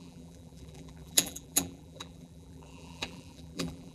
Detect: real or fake fake